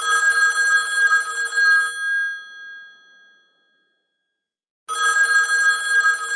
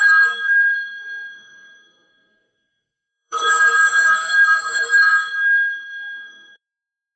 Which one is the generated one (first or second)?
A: second